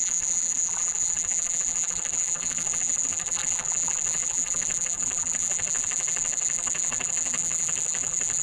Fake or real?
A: fake